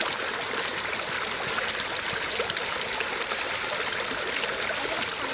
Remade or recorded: recorded